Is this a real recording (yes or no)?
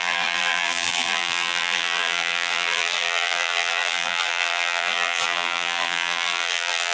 no